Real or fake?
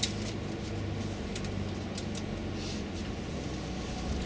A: real